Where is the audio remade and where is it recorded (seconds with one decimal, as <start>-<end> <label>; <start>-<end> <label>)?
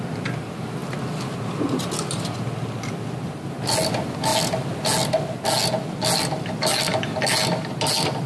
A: 0.0-8.3 recorded